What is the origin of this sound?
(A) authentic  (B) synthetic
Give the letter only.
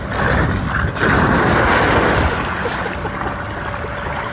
A